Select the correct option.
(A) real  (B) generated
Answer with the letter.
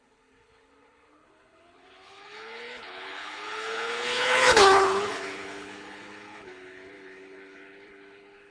B